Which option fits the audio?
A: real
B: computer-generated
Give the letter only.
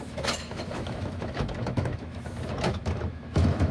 B